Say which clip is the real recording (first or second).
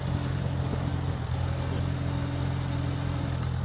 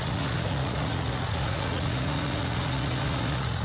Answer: first